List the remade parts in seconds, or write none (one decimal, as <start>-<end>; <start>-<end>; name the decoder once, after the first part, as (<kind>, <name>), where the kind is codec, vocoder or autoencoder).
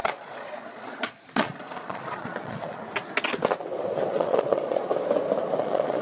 0.0-2.8 (vocoder, Vocos); 4.1-4.9; 5.6-6.0